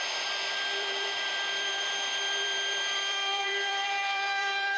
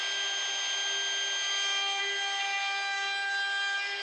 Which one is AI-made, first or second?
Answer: first